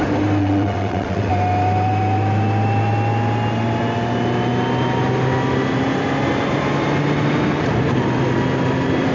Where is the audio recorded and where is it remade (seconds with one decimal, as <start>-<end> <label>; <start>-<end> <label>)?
0.0-0.4 recorded; 0.4-1.3 remade; 1.3-9.1 recorded